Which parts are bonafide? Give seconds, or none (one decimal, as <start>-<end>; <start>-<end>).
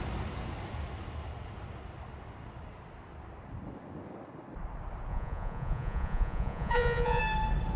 0.0-5.1; 7.2-7.8